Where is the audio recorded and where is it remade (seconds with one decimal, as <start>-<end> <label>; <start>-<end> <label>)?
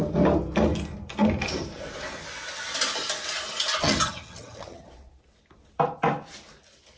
0.0-3.8 recorded; 3.8-4.9 remade; 4.9-7.0 recorded